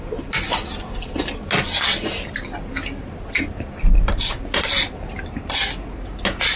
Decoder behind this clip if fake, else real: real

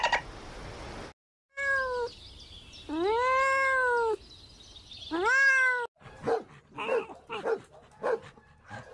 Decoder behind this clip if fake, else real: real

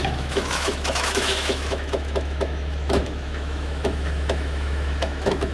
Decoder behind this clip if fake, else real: fake, autoencoder, DAC-VAE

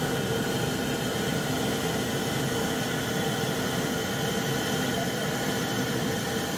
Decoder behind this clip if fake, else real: real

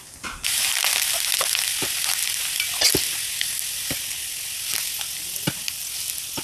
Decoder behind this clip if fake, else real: real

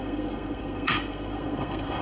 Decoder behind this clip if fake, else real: fake, codec, SNAC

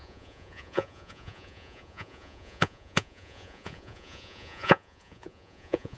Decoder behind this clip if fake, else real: fake, vocoder, Vocos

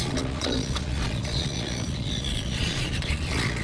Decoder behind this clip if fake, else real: fake, vocoder, Vocos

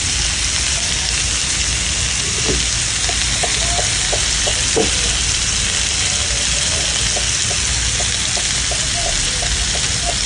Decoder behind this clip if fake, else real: real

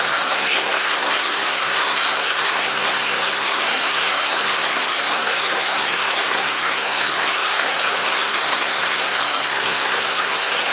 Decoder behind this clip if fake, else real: fake, codec, SNAC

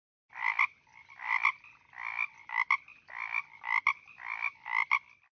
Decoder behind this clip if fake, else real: real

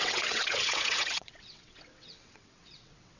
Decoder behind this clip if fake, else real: fake, vocoder, WaveNeXt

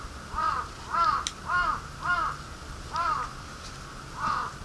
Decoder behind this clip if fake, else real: real